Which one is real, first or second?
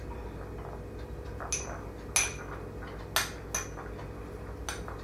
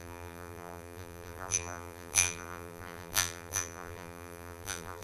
first